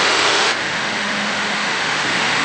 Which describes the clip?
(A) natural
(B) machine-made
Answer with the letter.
B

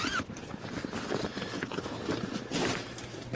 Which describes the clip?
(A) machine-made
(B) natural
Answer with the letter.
B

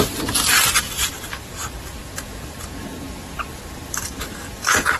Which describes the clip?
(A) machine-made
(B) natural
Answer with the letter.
B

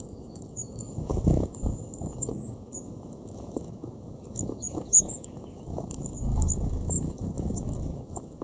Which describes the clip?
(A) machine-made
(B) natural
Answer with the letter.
A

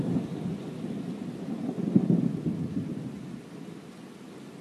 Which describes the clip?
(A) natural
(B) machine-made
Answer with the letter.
A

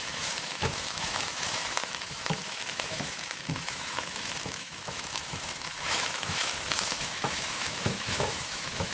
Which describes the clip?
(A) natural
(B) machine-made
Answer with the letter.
B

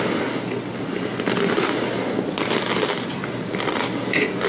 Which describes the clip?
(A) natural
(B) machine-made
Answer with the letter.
A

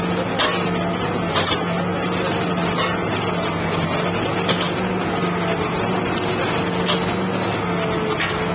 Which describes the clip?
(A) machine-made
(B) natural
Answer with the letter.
B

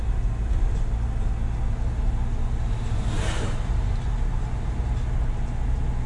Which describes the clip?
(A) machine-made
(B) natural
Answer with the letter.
B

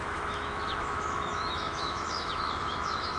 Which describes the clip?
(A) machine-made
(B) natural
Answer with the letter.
A